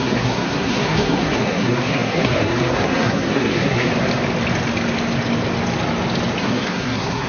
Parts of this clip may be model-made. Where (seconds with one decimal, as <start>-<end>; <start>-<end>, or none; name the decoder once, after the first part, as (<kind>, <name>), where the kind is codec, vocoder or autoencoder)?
0.0-3.9 (codec, SNAC); 6.4-7.3